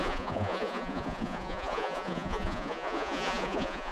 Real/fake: fake